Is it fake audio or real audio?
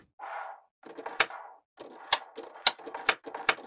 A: real